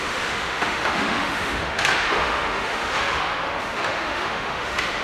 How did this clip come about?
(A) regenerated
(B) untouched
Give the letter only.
A